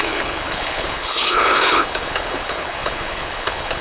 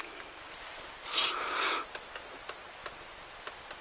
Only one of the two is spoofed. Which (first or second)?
first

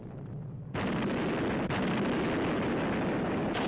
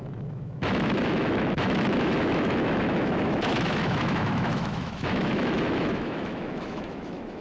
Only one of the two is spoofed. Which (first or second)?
second